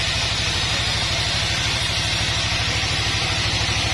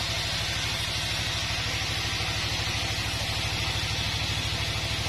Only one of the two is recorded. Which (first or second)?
second